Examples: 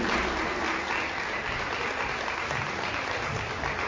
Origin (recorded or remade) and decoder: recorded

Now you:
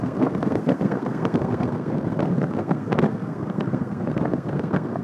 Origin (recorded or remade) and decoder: remade, codec, SNAC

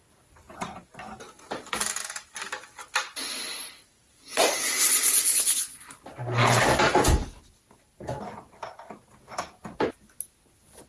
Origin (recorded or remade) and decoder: recorded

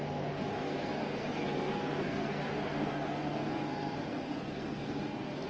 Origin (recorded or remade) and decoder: remade, codec, SNAC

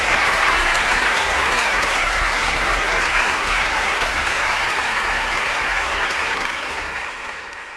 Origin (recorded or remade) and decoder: remade, codec, SNAC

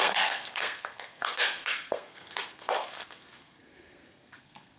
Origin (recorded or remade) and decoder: remade, codec, SNAC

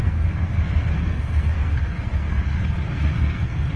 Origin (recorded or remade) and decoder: remade, codec, SNAC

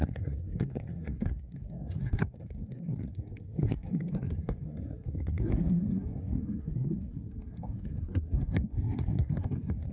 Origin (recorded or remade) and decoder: remade, codec, SNAC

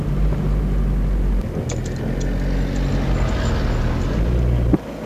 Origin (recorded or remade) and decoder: recorded